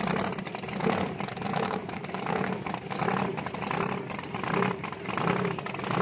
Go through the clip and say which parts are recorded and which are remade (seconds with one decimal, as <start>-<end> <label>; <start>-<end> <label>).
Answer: 0.0-0.8 recorded; 0.8-3.0 remade; 3.0-6.0 recorded